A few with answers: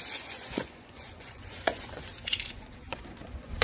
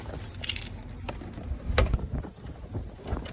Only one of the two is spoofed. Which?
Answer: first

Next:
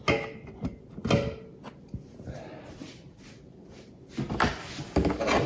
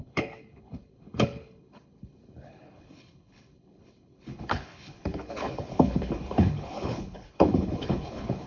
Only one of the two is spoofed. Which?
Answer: second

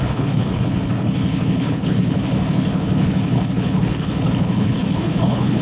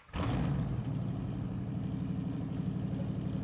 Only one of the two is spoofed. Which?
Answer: first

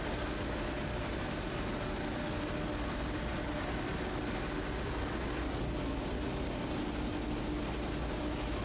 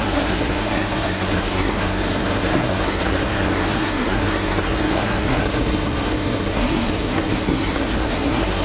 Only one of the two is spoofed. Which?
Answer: second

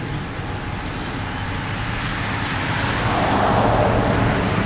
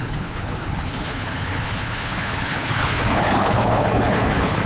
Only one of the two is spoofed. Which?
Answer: second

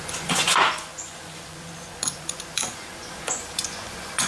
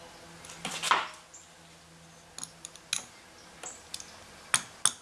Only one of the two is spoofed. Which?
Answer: first